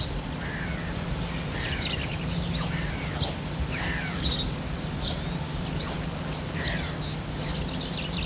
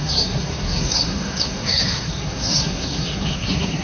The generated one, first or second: second